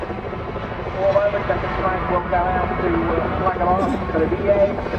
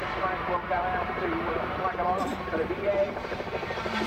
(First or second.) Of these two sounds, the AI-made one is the second